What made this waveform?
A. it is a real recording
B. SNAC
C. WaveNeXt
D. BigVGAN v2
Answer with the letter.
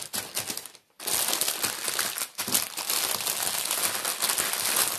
A